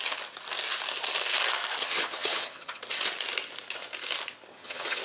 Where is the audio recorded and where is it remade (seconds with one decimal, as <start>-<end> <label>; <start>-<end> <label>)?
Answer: 0.0-1.8 recorded; 1.8-2.8 remade; 2.8-4.5 recorded; 4.5-5.0 remade